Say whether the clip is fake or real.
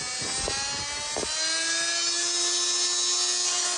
real